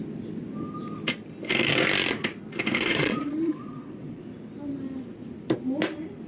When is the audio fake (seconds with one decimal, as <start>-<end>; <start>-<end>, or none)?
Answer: 2.9-4.2